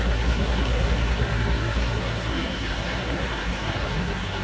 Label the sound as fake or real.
fake